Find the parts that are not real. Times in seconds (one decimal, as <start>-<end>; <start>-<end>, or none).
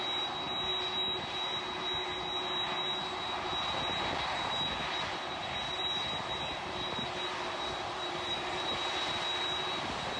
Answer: 4.8-8.8